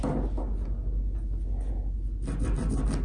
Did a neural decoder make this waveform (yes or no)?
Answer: no